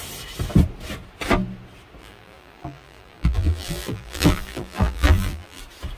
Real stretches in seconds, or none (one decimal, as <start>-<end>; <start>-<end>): 0.0-2.0; 5.6-6.0